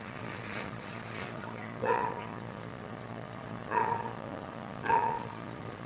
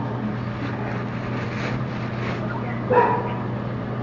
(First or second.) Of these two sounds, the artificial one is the first